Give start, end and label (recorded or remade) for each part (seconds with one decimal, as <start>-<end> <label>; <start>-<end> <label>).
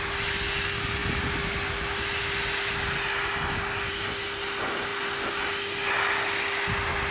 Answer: 0.0-7.1 recorded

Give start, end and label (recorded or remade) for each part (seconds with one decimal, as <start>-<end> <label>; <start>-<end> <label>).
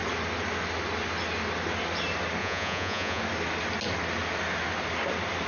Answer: 0.0-2.4 recorded; 2.4-3.2 remade; 3.2-5.5 recorded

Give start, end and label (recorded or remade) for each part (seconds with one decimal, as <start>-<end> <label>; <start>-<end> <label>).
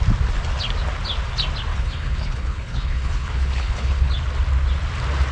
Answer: 0.0-1.7 recorded; 1.7-4.1 remade; 4.1-5.3 recorded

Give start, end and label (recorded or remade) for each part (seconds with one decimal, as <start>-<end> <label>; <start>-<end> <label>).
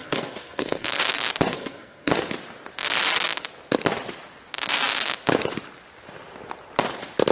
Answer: 0.0-1.0 remade; 1.0-1.5 recorded; 1.5-2.1 remade; 2.1-7.3 recorded